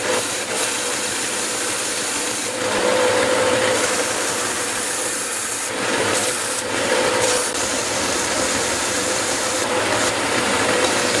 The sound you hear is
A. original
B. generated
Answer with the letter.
B